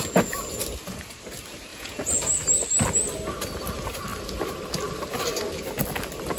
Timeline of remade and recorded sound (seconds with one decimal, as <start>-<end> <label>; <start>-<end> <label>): 0.0-1.7 recorded; 1.7-2.3 remade; 2.3-6.4 recorded